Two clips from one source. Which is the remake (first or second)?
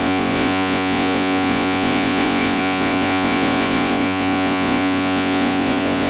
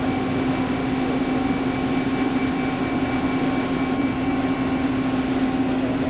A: first